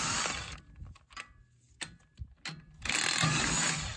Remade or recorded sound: recorded